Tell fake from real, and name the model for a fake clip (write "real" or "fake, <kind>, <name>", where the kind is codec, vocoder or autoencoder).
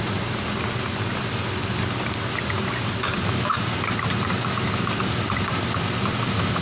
real